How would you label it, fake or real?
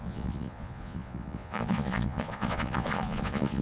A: fake